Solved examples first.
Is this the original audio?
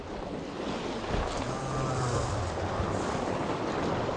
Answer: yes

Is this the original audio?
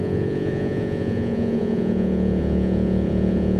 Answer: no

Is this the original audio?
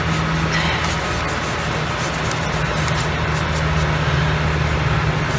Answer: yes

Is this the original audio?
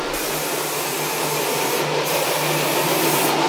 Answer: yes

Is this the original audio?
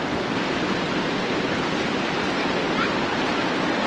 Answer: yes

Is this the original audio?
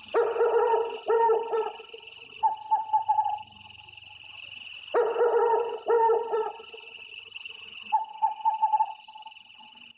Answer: no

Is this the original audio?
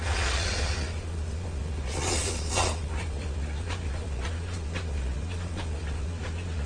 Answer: no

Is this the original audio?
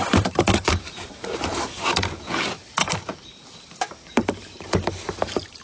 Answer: no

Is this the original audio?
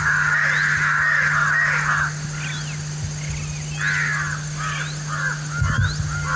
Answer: yes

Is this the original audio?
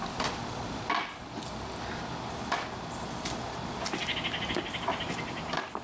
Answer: yes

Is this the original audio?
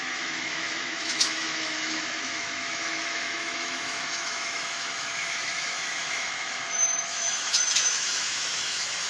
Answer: no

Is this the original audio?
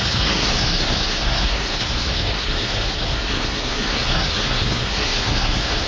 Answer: no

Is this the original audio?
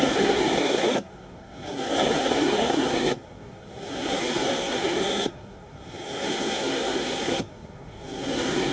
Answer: no